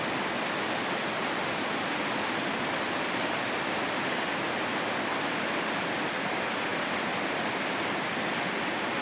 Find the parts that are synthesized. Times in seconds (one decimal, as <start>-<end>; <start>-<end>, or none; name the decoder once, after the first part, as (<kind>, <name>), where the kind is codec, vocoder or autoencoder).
none